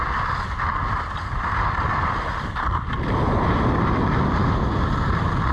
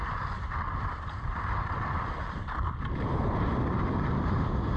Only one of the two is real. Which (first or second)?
first